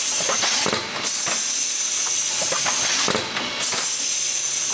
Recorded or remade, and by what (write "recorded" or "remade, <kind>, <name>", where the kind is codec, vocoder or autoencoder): recorded